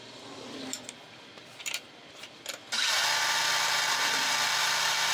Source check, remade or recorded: remade